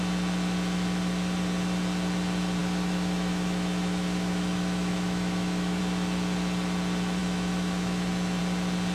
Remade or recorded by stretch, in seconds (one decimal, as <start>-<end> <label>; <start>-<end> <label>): 0.0-2.6 recorded; 2.6-5.8 remade; 5.8-7.2 recorded; 7.2-8.4 remade; 8.4-8.9 recorded